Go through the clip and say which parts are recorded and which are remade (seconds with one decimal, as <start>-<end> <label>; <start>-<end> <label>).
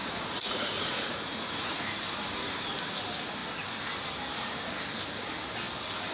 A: 0.0-1.8 remade; 1.8-6.1 recorded